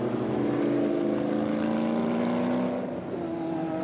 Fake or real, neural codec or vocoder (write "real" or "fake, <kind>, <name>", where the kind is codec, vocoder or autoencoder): real